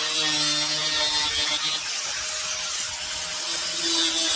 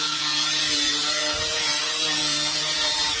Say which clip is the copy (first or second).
second